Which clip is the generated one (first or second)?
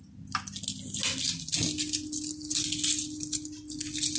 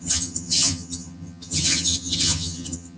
second